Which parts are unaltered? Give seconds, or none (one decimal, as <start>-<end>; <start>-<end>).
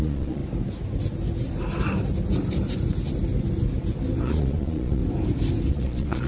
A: 0.4-4.2; 5.0-5.7